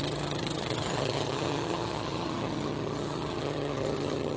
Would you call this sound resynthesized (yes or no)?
yes